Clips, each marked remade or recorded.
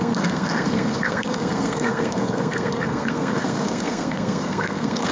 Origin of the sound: remade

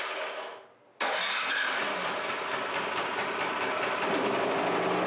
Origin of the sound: recorded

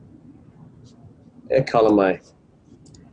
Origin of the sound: recorded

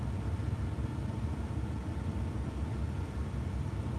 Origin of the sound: recorded